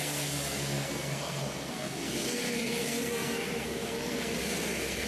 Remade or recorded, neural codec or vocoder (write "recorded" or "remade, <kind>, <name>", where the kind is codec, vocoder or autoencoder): remade, codec, SNAC